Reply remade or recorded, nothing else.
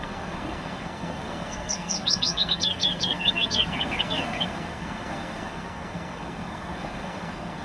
remade